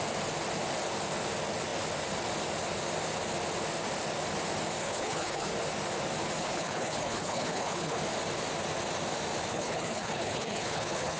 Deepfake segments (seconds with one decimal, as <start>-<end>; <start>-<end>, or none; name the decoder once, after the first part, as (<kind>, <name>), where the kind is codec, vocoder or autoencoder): 4.8-5.5 (codec, HILCodec); 6.4-8.0; 9.5-11.2